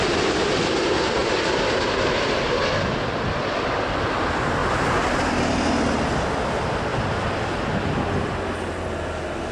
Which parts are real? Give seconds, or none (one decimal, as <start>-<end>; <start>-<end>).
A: 0.0-1.2; 4.0-4.6; 5.5-6.9; 8.0-9.5